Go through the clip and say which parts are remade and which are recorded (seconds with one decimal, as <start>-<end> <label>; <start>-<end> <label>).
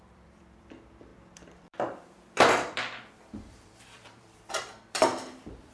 0.0-5.7 remade